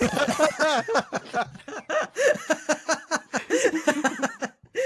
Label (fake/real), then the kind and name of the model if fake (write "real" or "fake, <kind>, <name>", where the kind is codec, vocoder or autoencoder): real